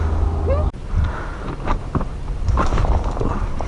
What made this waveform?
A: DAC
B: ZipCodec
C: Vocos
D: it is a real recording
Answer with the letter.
D